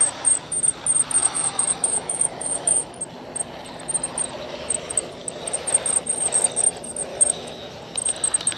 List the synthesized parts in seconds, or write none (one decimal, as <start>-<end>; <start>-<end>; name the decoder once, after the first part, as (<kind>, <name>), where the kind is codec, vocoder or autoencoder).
1.2-2.9 (autoencoder, DAC-VAE); 7.1-7.7